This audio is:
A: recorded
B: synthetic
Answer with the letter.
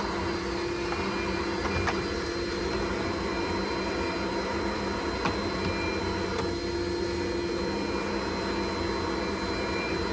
A